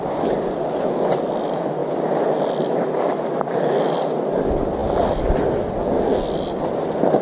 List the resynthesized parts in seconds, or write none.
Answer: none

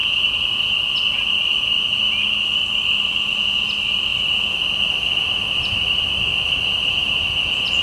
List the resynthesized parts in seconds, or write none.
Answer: none